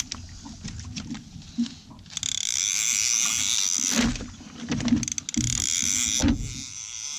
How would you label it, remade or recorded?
recorded